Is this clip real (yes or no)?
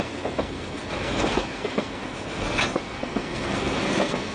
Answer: no